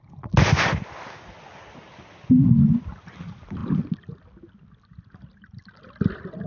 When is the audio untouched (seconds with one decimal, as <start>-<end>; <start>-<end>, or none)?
0.0-6.5